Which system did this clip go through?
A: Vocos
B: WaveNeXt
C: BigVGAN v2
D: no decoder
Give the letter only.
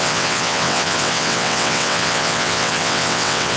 B